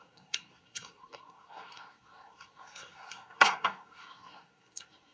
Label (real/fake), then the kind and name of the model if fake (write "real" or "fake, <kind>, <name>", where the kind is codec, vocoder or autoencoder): fake, codec, SNAC